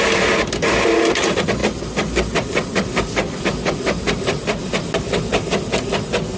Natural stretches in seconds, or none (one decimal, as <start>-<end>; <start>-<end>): 0.0-6.4